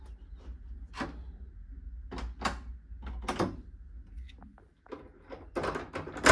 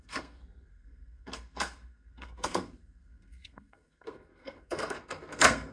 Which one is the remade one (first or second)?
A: second